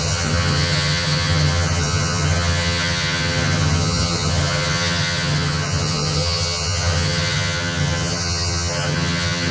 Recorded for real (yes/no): no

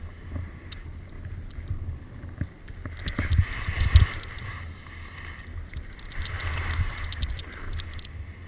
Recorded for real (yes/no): yes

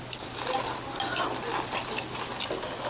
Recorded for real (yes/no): yes